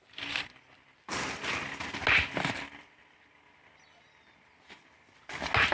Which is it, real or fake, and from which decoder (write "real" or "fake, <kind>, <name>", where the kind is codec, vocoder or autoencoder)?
real